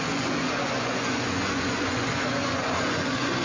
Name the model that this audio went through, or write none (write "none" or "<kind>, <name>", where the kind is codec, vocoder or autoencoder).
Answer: vocoder, Vocos